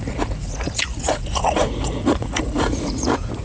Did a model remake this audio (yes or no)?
yes